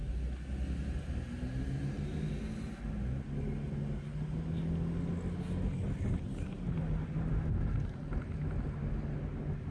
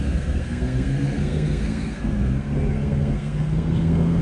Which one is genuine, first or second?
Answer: first